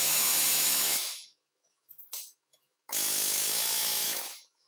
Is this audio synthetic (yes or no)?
yes